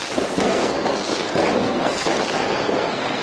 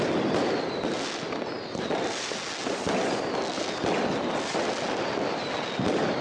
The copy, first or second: first